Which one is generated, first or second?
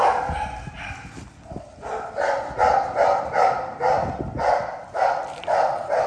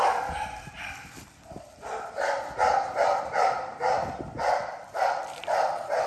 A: second